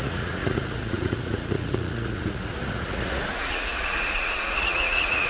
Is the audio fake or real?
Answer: fake